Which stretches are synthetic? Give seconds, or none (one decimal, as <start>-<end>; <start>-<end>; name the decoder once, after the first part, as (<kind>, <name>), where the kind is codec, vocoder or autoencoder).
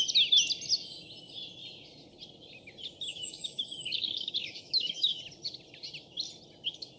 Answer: 3.1-5.2 (autoencoder, DAC-VAE)